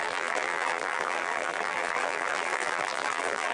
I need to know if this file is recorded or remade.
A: remade